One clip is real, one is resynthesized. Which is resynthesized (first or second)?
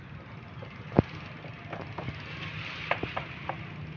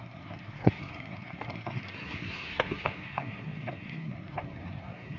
second